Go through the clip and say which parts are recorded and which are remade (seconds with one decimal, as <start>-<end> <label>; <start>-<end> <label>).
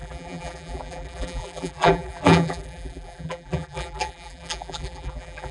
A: 0.0-5.5 remade